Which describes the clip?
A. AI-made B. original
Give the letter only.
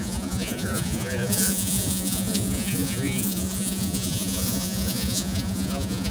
A